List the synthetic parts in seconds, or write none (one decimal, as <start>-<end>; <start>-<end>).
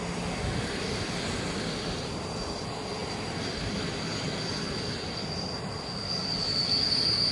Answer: none